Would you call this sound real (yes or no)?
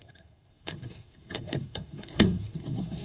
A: no